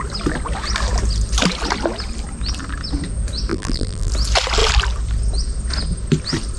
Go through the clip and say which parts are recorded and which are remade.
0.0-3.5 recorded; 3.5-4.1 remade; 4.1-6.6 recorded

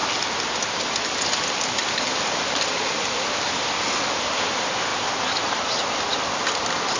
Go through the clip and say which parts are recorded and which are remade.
0.0-7.0 recorded